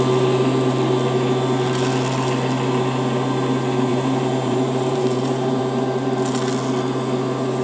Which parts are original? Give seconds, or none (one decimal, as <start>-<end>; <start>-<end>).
0.0-3.9; 5.6-7.6